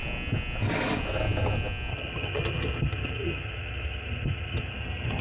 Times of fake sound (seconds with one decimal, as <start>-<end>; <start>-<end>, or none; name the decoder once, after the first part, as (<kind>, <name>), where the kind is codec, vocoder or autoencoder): 1.9-5.2 (vocoder, HiFi-GAN)

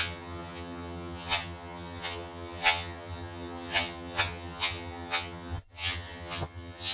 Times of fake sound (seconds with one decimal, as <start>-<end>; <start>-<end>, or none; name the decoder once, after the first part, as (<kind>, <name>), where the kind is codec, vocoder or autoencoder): 0.0-6.9 (vocoder, HiFi-GAN)

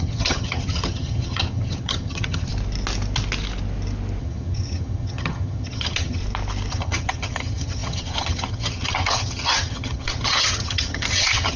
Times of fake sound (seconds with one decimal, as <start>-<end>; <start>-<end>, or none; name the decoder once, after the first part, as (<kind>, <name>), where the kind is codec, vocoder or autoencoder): 0.0-2.5 (vocoder, HiFi-GAN); 4.2-6.2; 6.7-11.6

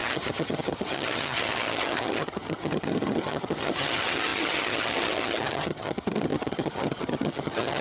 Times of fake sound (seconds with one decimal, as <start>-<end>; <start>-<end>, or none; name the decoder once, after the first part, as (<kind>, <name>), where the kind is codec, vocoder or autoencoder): 0.0-7.8 (vocoder, HiFi-GAN)

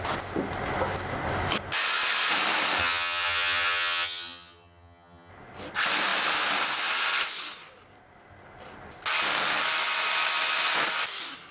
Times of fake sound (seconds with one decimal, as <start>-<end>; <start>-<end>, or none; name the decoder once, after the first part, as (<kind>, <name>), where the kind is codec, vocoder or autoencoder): 2.8-5.3 (vocoder, HiFi-GAN)

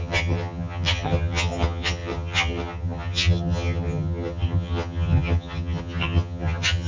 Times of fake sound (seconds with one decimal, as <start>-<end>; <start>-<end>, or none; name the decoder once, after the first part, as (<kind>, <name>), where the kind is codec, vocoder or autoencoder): 0.0-6.9 (vocoder, HiFi-GAN)